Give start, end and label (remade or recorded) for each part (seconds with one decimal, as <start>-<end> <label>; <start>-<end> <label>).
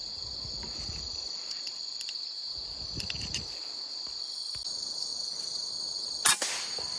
0.0-7.0 recorded